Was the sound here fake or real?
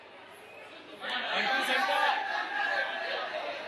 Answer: real